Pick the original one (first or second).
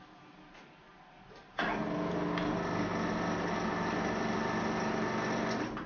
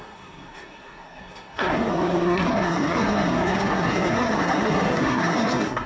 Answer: first